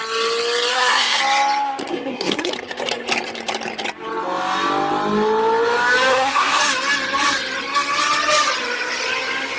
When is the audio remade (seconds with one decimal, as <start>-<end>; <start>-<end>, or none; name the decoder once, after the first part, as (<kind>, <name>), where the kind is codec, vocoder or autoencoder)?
0.7-1.2 (codec, SNAC); 1.9-2.5; 6.1-6.6